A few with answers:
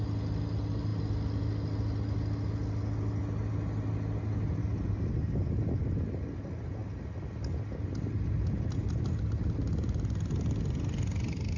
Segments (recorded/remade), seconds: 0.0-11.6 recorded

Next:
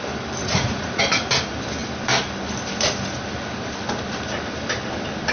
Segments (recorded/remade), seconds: 0.0-0.4 recorded; 0.4-1.0 remade; 1.0-5.3 recorded

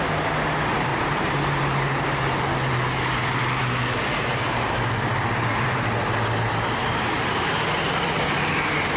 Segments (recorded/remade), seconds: 0.0-0.9 recorded; 0.9-1.5 remade; 1.5-9.0 recorded